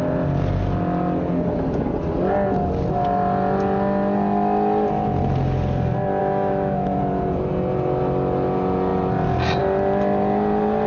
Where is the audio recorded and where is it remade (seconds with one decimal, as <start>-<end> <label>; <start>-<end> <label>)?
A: 0.0-6.2 recorded; 6.2-7.0 remade; 7.0-10.9 recorded